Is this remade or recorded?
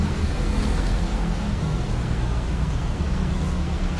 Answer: remade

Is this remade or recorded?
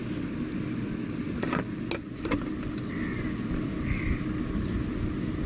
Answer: recorded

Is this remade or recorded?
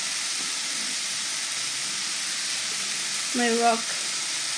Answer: recorded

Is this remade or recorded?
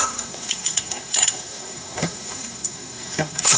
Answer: remade